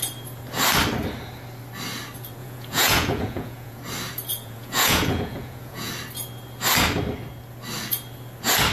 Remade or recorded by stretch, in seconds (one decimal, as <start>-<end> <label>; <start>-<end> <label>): 0.0-2.4 recorded; 2.4-3.8 remade; 3.8-4.3 recorded; 4.3-5.9 remade; 5.9-8.7 recorded